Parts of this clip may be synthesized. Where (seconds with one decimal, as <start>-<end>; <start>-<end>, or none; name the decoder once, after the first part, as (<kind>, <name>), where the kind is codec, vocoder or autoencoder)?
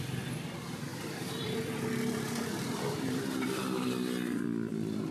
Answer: 0.9-3.5 (vocoder, BigVGAN v2); 4.5-5.1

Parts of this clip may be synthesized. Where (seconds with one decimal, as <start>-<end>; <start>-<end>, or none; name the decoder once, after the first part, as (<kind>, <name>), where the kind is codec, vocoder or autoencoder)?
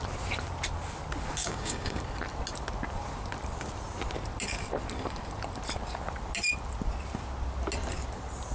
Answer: 1.4-2.0 (codec, DAC)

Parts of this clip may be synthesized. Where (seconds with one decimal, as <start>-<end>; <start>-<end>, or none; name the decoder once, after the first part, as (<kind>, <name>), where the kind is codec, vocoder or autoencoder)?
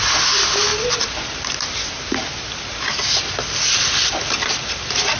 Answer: none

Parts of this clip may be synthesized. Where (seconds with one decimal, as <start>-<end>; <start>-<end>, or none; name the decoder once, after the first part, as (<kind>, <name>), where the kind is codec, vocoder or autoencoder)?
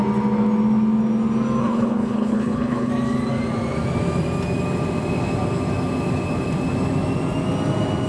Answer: 1.6-2.9 (codec, HILCodec)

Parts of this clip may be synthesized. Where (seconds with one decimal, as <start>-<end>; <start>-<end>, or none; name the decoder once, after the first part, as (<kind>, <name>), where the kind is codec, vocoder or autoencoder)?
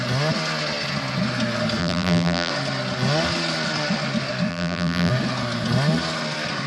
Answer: 1.8-2.5 (vocoder, BigVGAN v2); 4.5-5.1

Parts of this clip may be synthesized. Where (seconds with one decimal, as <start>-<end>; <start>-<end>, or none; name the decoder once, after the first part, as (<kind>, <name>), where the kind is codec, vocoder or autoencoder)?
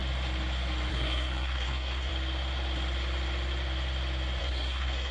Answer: 0.9-2.1 (codec, SNAC); 4.4-5.1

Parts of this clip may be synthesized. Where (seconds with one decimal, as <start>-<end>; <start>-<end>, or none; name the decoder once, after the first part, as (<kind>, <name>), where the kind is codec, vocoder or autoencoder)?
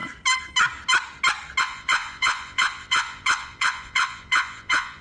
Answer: 1.6-5.0 (vocoder, Vocos)